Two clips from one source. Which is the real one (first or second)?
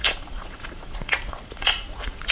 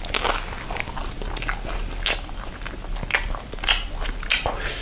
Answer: second